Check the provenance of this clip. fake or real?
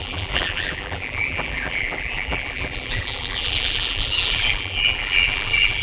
fake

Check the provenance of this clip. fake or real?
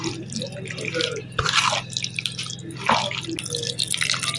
real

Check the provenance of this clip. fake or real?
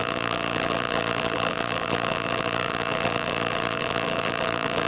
fake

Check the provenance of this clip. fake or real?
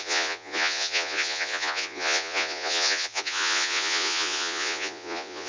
fake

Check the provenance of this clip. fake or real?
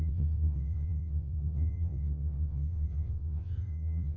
fake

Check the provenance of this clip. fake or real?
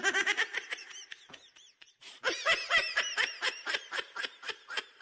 fake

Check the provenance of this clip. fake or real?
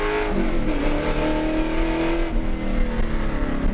real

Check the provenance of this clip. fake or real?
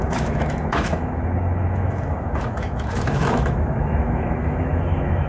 fake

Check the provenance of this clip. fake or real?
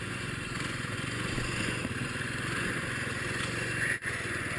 fake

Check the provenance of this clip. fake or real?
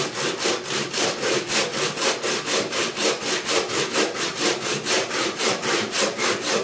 real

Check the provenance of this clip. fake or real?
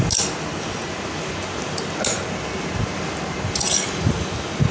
real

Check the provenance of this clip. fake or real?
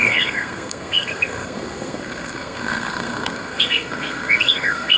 fake